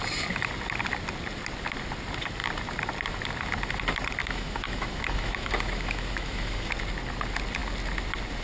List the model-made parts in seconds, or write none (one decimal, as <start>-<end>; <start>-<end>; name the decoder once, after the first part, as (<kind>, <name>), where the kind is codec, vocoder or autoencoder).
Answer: 4.2-6.7 (autoencoder, DAC-VAE)